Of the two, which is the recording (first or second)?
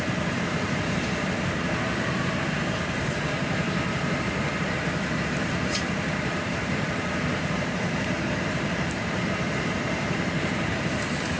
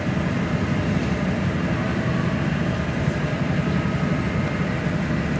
second